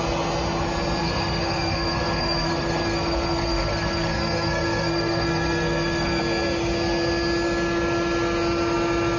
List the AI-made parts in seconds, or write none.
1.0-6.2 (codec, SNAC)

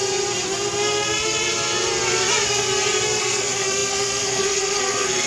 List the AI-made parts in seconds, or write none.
3.2-5.3 (codec, SNAC)